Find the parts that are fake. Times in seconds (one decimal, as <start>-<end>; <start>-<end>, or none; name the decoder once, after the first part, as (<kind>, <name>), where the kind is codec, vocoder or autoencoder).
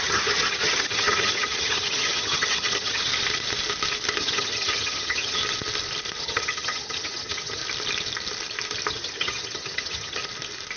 0.0-3.1 (vocoder, HiFi-GAN); 4.2-5.4; 6.2-7.6; 8.9-10.2